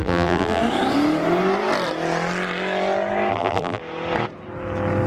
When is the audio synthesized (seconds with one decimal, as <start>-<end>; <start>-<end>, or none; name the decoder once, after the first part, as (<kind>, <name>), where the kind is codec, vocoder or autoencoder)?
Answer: 0.0-0.6 (vocoder, BigVGAN v2); 3.3-3.8